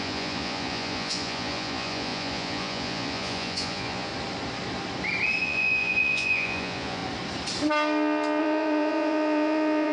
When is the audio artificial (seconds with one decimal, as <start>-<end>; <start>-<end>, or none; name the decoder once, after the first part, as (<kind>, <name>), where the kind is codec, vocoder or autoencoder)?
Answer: 0.0-4.1 (vocoder, Vocos); 5.4-7.0; 8.4-9.9